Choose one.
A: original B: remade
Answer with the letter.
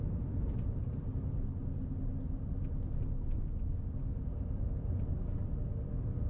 A